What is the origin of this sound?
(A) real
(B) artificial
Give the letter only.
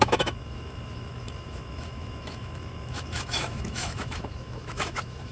B